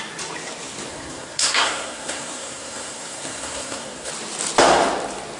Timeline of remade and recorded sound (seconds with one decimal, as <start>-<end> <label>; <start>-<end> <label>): 0.0-0.9 recorded; 0.9-4.1 remade; 4.1-5.4 recorded